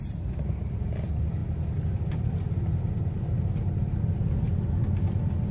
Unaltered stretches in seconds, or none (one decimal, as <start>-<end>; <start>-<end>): 0.0-5.5